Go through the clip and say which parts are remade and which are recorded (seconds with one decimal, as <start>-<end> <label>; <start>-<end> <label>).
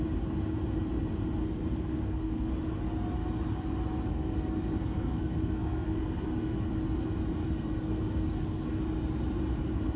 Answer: 0.0-1.4 recorded; 1.4-2.5 remade; 2.5-4.1 recorded; 4.1-6.7 remade; 6.7-7.4 recorded; 7.4-8.8 remade; 8.8-10.0 recorded